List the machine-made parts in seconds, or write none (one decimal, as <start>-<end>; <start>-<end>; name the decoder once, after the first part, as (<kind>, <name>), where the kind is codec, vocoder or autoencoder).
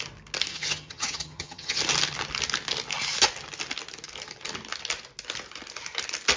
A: 0.5-1.8 (vocoder, HiFi-GAN)